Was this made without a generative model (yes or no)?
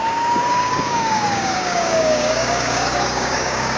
no